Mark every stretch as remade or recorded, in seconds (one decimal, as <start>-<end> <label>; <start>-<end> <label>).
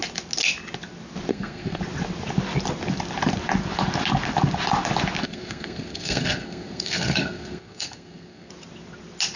0.0-1.3 recorded; 1.3-1.8 remade; 1.8-5.2 recorded; 5.2-8.5 remade; 8.5-9.4 recorded